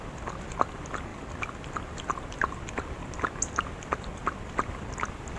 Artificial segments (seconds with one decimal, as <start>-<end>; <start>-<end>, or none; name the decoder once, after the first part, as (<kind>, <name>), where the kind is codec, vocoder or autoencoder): none